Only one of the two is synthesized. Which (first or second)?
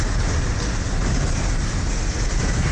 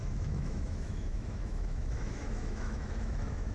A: second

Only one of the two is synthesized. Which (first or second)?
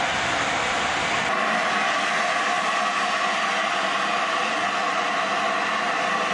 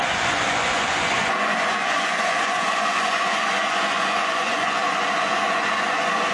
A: second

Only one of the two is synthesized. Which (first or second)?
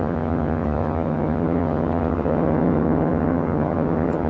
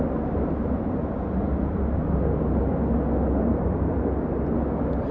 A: first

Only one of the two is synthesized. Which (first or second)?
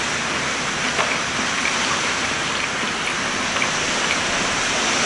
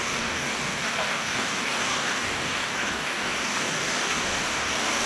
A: second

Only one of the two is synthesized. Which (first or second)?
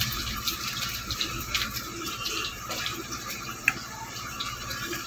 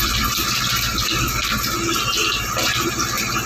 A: first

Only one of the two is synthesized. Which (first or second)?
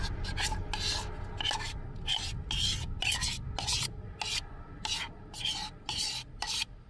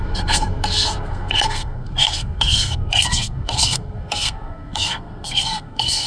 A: second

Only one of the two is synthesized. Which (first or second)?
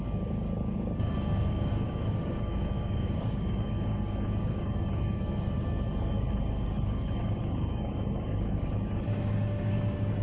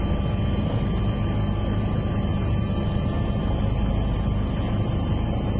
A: first